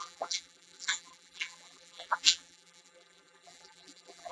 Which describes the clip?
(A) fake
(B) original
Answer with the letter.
A